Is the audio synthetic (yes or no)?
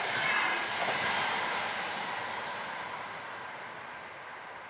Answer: no